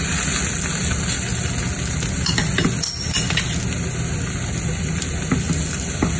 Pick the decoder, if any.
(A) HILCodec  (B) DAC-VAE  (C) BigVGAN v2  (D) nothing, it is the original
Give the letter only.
D